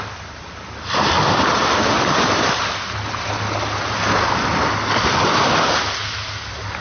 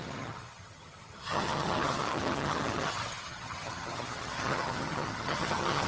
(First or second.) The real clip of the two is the first